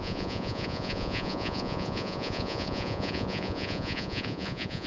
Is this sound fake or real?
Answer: fake